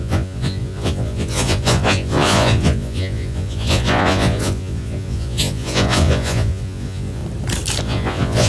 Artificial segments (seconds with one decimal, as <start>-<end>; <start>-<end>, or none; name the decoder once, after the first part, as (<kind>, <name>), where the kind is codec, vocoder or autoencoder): 0.0-7.2 (vocoder, Vocos); 7.8-8.5